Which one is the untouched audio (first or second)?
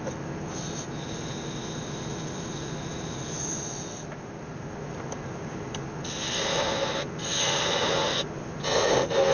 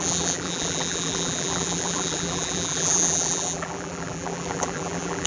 first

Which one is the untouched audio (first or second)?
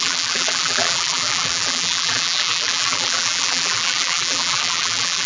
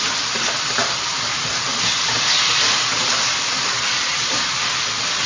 second